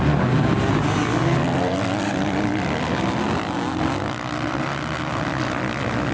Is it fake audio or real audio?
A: real